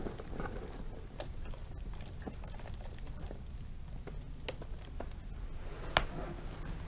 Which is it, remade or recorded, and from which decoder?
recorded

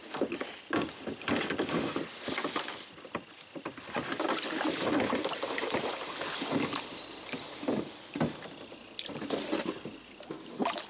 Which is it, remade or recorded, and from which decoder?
recorded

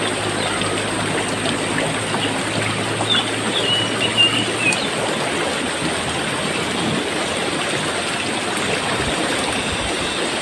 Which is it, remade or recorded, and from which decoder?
recorded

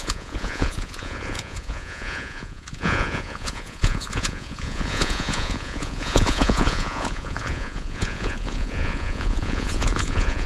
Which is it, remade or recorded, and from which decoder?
remade, vocoder, Vocos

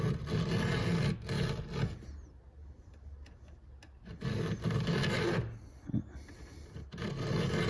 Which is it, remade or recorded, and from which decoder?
recorded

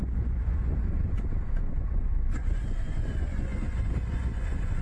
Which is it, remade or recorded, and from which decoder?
remade, vocoder, Vocos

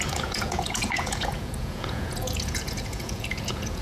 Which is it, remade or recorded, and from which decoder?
remade, vocoder, Vocos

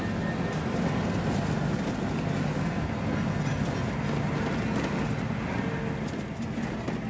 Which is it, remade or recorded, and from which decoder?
recorded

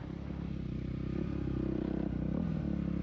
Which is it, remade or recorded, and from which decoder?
recorded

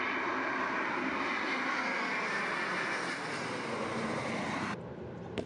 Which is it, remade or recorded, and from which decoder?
recorded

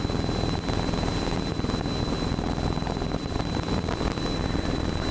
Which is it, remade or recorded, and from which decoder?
recorded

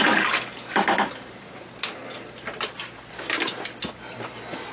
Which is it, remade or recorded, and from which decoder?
recorded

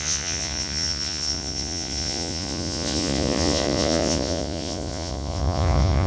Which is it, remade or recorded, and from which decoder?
remade, vocoder, Vocos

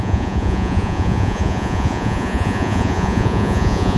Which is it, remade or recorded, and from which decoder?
remade, vocoder, Vocos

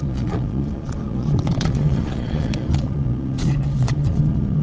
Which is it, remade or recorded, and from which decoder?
remade, vocoder, Vocos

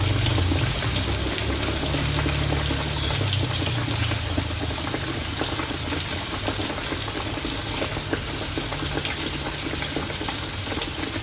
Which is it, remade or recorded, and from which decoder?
recorded